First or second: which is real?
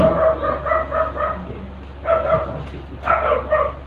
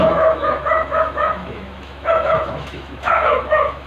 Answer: first